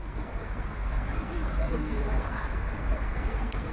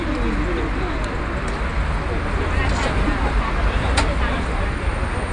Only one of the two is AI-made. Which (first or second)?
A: first